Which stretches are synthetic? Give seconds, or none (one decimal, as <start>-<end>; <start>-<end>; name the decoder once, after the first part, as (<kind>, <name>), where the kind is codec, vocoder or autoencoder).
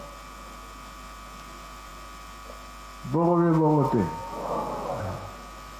none